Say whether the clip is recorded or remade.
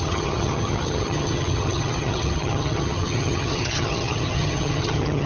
remade